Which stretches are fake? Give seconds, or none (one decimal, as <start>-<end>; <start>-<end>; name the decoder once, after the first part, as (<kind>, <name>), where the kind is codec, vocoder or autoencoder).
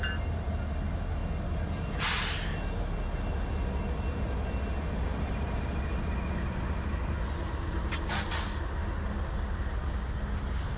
none